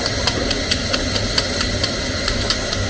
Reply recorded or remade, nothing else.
recorded